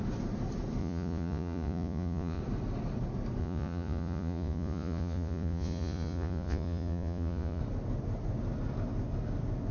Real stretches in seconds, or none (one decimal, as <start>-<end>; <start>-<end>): 0.0-0.8; 2.4-3.4; 7.6-9.7